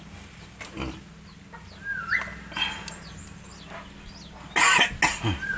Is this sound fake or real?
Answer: real